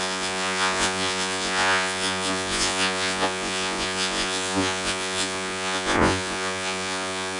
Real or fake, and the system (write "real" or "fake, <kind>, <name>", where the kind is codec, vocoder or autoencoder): fake, vocoder, Vocos